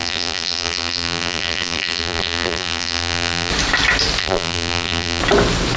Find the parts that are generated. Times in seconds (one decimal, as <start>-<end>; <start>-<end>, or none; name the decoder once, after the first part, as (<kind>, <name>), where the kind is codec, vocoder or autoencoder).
0.0-3.5 (vocoder, BigVGAN v2); 4.2-5.2